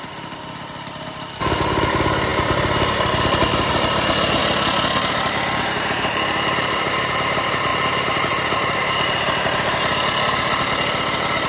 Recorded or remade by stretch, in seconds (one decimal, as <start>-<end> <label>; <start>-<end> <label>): 0.0-4.4 remade; 4.4-5.1 recorded; 5.1-9.9 remade; 9.9-11.5 recorded